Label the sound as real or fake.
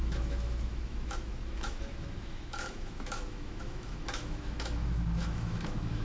fake